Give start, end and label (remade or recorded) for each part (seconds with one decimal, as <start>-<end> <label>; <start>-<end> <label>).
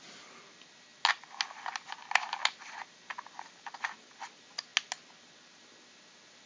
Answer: 0.0-6.5 recorded